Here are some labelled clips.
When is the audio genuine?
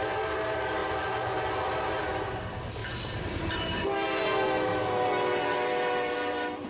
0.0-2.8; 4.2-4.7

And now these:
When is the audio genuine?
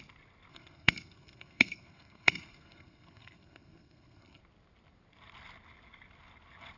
0.0-0.5; 4.4-6.8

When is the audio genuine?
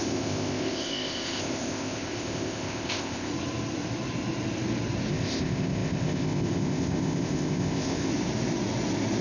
3.3-5.1; 8.1-9.2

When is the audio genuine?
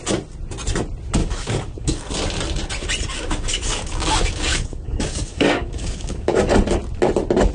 0.0-1.2; 2.1-3.5; 6.4-7.5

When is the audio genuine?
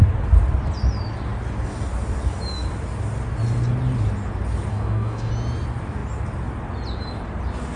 0.0-4.7; 5.3-7.8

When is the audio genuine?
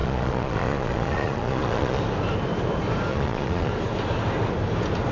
2.0-3.1; 3.7-5.1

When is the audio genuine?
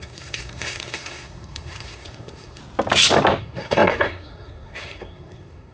2.6-3.4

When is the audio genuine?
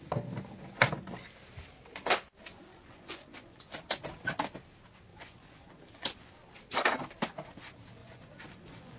0.0-2.7; 3.7-5.1; 6.3-8.0